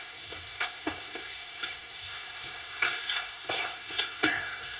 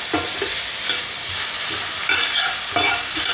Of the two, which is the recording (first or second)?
second